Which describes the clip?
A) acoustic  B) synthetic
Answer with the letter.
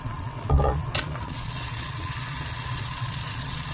B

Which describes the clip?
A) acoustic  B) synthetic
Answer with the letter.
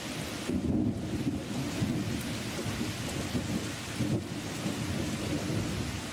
A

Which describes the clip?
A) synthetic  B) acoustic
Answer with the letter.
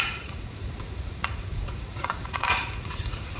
A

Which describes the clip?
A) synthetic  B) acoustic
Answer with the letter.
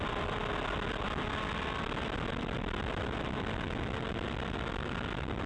B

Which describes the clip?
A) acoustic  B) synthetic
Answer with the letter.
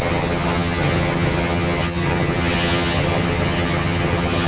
B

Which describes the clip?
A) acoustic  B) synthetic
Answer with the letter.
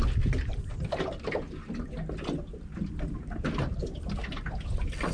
A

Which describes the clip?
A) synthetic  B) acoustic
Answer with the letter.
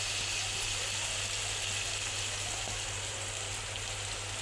B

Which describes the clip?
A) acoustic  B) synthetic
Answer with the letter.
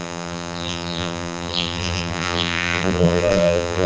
B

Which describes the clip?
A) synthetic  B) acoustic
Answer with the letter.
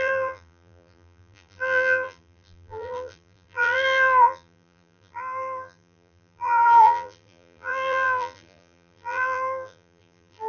A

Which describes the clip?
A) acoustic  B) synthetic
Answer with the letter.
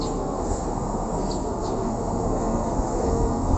B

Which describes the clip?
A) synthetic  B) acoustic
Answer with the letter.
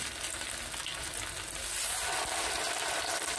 B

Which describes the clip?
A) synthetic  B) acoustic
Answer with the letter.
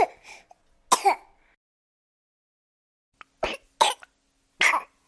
B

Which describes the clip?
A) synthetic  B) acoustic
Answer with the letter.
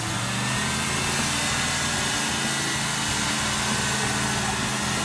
B